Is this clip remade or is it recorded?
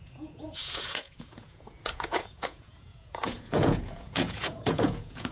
remade